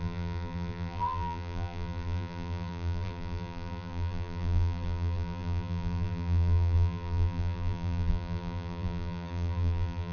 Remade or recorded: remade